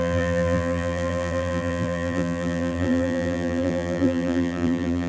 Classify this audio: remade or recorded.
remade